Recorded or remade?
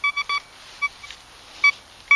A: recorded